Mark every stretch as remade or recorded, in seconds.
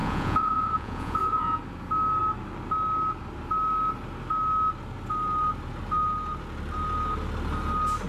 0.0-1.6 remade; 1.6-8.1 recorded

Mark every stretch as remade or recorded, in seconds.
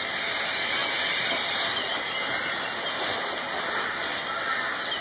0.0-5.0 recorded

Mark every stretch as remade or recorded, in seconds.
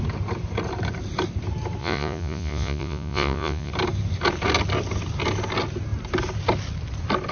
0.0-1.8 recorded; 1.8-3.7 remade; 3.7-7.3 recorded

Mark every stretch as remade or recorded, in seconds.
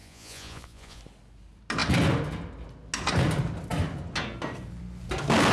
0.0-1.0 remade; 1.0-5.5 recorded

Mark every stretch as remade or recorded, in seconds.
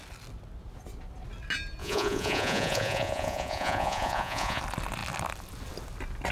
0.0-1.8 recorded; 1.8-4.6 remade; 4.6-6.3 recorded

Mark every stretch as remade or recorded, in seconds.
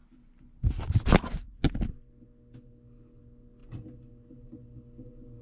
0.0-5.4 recorded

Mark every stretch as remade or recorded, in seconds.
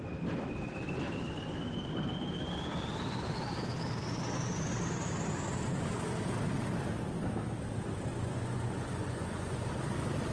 0.0-8.1 recorded; 8.1-9.7 remade; 9.7-10.3 recorded